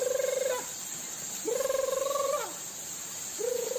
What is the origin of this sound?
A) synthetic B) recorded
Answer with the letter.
B